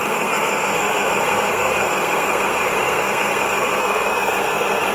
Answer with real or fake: fake